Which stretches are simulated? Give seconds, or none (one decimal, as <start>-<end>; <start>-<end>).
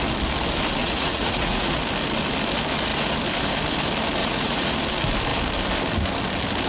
0.8-1.8; 4.2-4.7